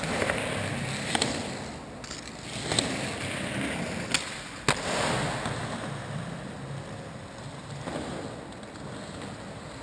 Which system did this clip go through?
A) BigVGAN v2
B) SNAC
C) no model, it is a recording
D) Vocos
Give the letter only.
C